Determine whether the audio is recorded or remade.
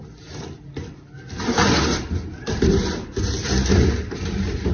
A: recorded